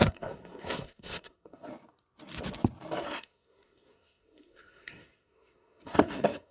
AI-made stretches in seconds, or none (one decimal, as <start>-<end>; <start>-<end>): 0.0-1.7; 3.0-6.5